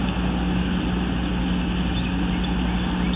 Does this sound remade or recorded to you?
recorded